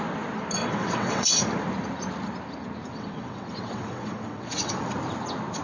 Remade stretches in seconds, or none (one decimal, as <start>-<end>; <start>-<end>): 0.6-1.3; 2.9-4.7